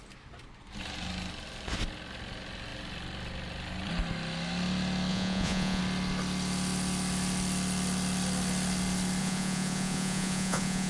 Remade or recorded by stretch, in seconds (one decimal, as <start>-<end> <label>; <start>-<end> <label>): 0.0-5.1 recorded; 5.1-5.8 remade; 5.8-9.2 recorded; 9.2-10.9 remade